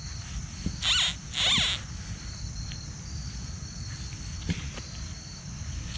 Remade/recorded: recorded